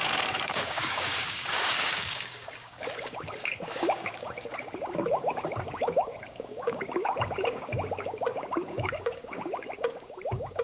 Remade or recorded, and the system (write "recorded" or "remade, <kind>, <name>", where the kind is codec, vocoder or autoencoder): remade, codec, DAC